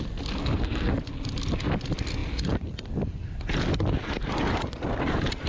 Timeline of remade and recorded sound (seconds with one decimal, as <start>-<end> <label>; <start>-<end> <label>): 0.0-0.4 recorded; 0.4-1.0 remade; 1.0-5.5 recorded